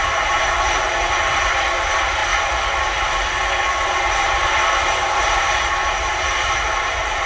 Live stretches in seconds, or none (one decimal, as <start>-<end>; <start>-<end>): 2.2-3.8